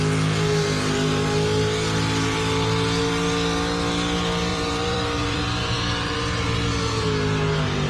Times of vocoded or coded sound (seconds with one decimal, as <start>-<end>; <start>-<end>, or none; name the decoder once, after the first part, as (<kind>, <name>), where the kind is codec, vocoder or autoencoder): 4.5-6.2 (vocoder, BigVGAN v2)